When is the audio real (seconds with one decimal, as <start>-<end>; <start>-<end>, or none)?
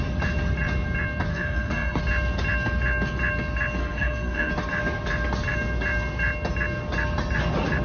0.0-1.3; 2.0-3.8; 4.5-7.8